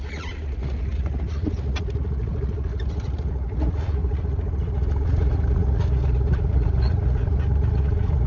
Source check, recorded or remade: remade